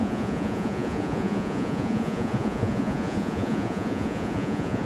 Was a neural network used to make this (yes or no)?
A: yes